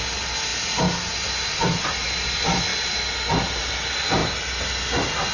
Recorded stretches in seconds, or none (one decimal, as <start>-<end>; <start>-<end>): 0.0-5.3